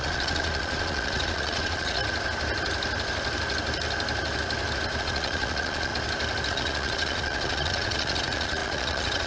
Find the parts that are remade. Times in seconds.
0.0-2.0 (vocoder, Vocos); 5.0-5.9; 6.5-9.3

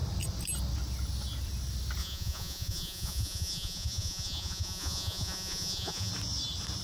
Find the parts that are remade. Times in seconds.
2.0-6.1 (vocoder, Vocos)

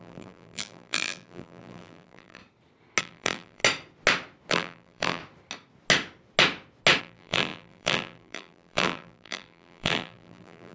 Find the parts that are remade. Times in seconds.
0.0-2.4 (vocoder, BigVGAN v2); 3.0-3.6; 4.5-5.2; 7.0-10.7